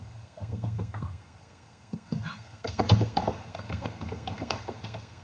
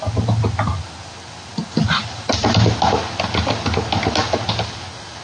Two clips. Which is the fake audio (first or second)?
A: first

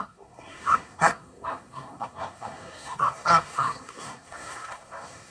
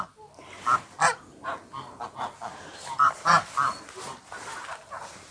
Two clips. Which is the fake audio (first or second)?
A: first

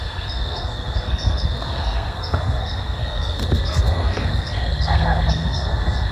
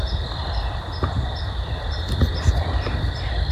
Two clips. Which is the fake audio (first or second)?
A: first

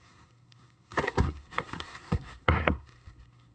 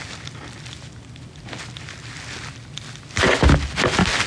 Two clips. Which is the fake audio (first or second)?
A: first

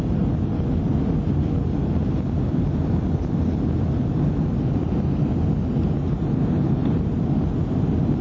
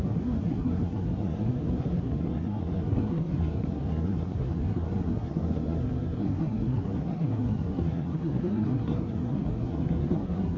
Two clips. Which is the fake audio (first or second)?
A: second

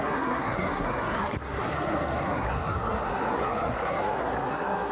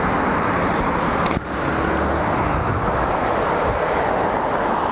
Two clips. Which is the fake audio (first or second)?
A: first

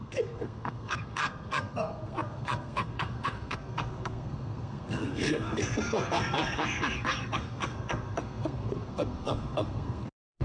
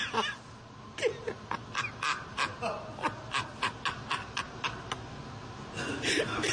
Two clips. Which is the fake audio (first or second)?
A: first